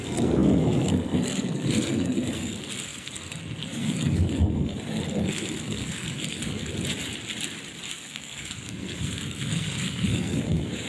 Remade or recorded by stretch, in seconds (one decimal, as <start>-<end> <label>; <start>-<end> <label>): 0.0-6.7 remade; 6.7-7.9 recorded; 7.9-10.9 remade

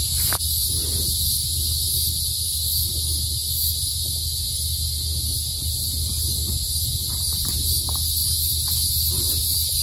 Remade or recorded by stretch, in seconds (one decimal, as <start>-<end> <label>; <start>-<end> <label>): 0.0-9.8 recorded

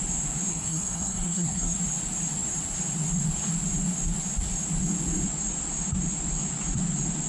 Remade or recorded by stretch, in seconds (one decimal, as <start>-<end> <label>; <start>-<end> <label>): 0.0-0.5 recorded; 0.5-1.8 remade; 1.8-7.3 recorded

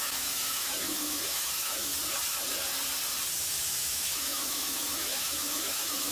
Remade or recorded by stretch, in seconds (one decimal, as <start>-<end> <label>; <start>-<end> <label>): 0.0-1.9 remade; 1.9-3.4 recorded; 3.4-6.1 remade